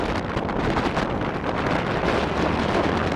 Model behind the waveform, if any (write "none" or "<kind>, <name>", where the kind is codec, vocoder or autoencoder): none